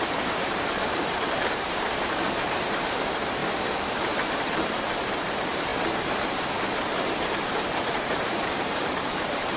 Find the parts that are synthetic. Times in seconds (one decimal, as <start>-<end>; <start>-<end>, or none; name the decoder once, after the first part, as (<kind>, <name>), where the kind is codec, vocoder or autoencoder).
0.0-3.4 (vocoder, BigVGAN v2); 4.1-5.7; 7.0-9.6